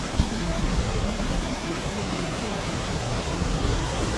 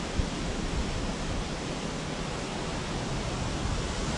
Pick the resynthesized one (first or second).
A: first